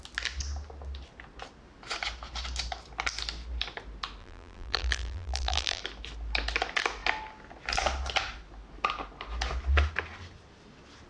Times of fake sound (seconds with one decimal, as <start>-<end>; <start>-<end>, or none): 4.2-5.8